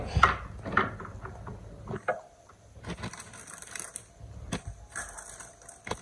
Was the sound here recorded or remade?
recorded